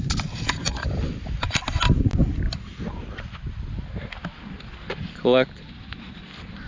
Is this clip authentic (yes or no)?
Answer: yes